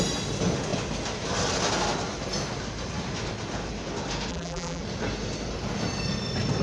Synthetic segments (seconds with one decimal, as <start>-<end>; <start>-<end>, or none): 4.3-4.8

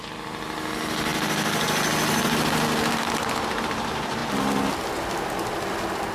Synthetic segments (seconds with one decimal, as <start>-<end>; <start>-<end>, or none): none

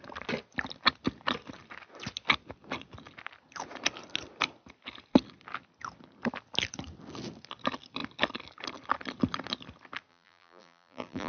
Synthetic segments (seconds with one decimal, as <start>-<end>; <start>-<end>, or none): 10.1-11.3

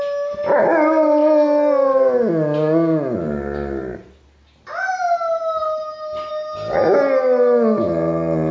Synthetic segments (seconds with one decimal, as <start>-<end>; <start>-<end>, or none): none

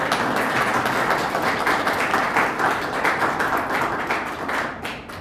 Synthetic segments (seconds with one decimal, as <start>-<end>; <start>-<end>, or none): none

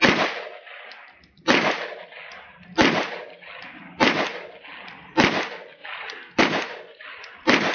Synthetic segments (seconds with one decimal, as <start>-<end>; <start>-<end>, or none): none